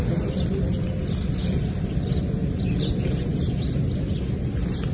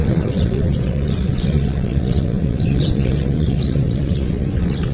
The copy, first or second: second